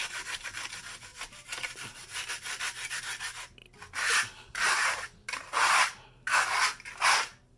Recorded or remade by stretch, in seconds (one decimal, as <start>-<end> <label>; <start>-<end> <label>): 0.0-0.5 remade; 0.5-1.1 recorded; 1.1-3.0 remade; 3.0-7.6 recorded